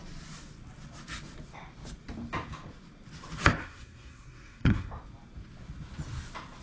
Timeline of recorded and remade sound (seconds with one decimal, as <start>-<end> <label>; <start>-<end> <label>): 0.0-3.6 recorded; 3.6-4.9 remade; 4.9-6.6 recorded